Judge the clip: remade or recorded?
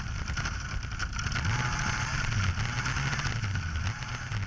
recorded